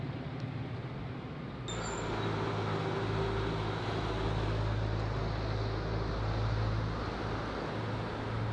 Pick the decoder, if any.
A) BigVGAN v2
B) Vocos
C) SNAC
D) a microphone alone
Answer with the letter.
D